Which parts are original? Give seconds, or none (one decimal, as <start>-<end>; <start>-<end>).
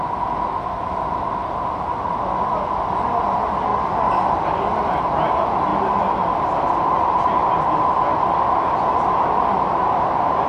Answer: 0.0-3.7; 5.3-10.5